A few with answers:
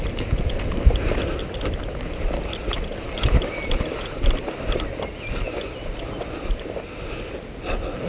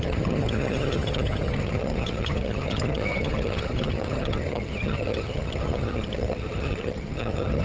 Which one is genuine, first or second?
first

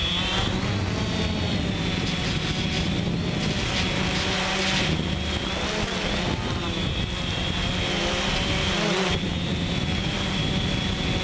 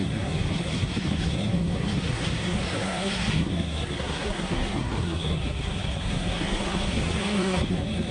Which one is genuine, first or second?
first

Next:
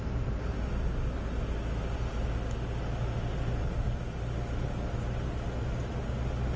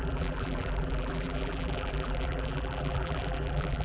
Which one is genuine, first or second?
first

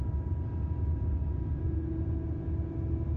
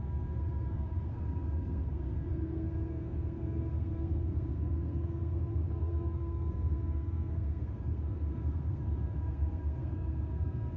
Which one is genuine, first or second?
first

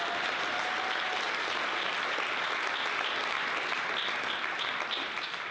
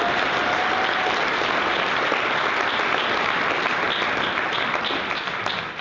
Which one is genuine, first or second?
first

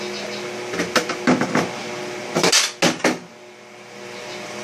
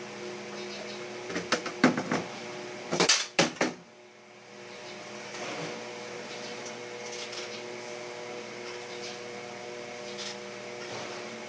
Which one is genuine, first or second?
first